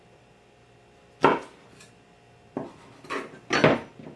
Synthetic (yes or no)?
no